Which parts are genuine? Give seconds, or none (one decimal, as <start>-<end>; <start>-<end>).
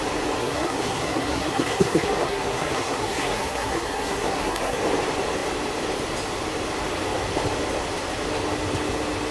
0.0-0.4; 4.8-9.3